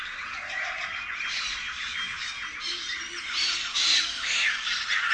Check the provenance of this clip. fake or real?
real